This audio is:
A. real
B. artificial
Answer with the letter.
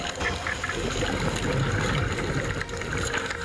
A